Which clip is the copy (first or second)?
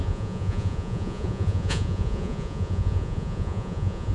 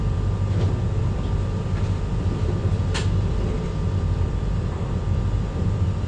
first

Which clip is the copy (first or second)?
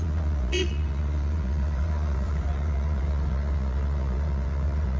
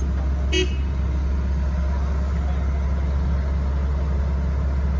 first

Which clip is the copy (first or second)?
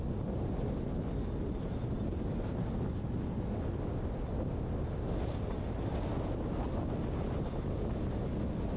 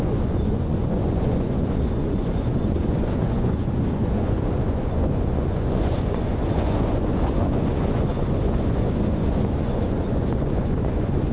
second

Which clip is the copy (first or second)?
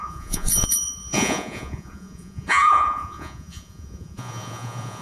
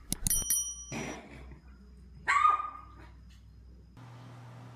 first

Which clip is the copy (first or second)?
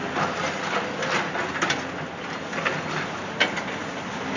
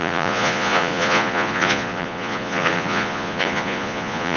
second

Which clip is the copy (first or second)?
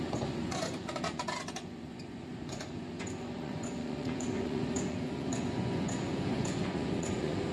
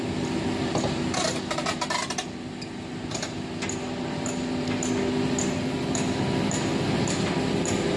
first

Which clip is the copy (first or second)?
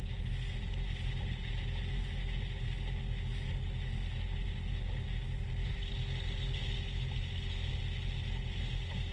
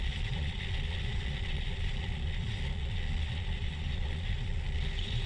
second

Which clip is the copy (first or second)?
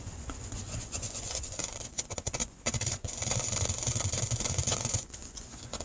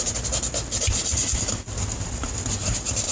first